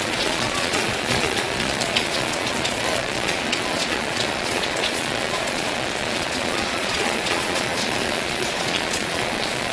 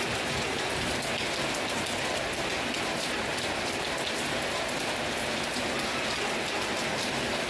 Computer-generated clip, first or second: first